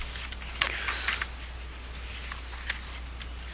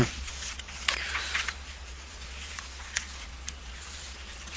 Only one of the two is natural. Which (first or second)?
first